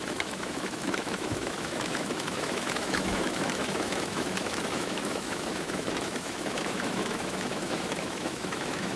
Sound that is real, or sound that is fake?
fake